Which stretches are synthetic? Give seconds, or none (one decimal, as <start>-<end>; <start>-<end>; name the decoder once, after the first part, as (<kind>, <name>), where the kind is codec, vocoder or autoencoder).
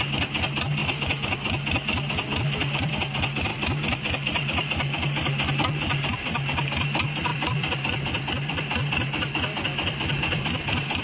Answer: 0.8-2.9 (vocoder, BigVGAN v2); 3.5-5.5; 7.3-11.0